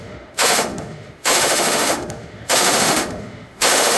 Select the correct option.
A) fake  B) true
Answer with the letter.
A